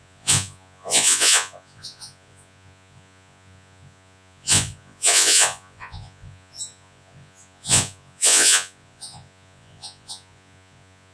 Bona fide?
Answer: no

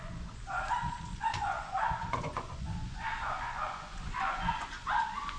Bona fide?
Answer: no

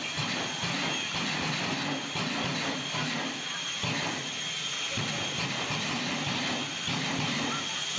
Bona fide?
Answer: yes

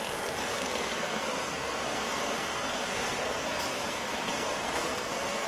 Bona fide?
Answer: no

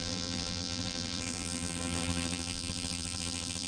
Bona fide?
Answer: no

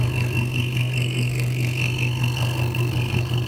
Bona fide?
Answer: no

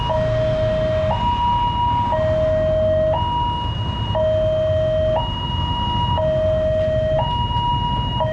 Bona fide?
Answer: yes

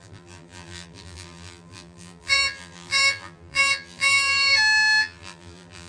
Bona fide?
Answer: no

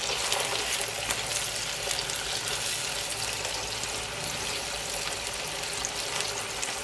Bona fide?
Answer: yes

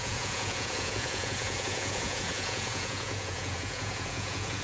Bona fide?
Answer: no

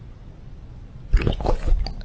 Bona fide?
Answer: yes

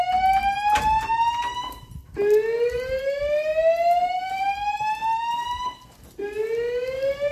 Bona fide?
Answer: yes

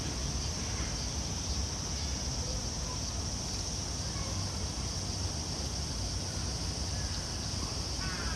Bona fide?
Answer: yes